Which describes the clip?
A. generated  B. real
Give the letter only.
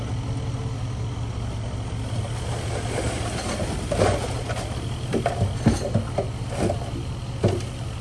B